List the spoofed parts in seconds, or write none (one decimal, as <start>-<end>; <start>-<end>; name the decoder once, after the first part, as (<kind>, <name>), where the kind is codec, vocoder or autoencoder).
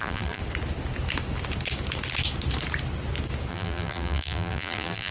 0.0-0.4 (vocoder, BigVGAN v2); 3.5-5.1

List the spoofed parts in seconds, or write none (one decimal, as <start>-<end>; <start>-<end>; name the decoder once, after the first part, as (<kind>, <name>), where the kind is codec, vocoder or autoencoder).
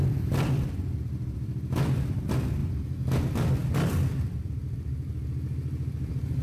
0.0-2.6 (vocoder, BigVGAN v2); 3.2-5.1; 5.9-6.4